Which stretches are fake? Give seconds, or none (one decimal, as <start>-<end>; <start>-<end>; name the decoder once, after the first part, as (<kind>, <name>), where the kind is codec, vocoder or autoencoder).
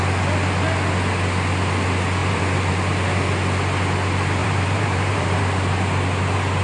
2.2-2.7 (vocoder, BigVGAN v2); 4.4-5.4